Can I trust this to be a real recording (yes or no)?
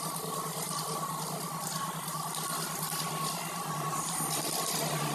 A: yes